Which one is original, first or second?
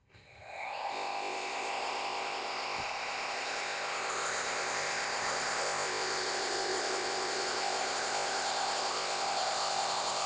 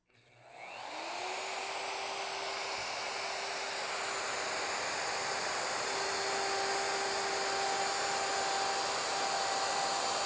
second